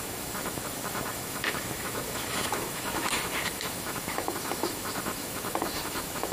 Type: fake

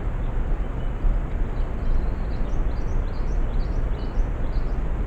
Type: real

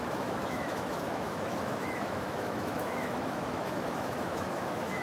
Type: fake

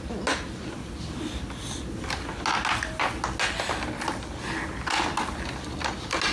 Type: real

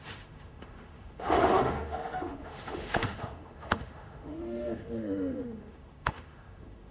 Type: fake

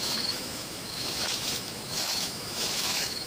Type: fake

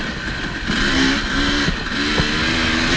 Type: real